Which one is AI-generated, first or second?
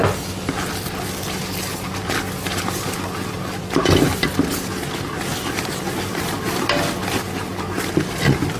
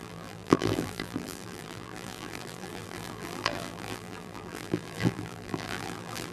second